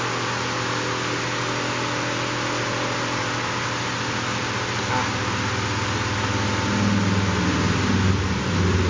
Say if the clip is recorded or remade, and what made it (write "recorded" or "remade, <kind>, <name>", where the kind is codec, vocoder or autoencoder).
recorded